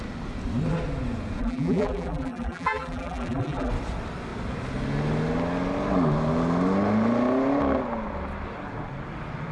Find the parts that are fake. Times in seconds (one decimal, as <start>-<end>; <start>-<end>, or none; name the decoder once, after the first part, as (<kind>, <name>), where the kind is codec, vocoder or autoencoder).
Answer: 1.4-3.7 (vocoder, BigVGAN v2)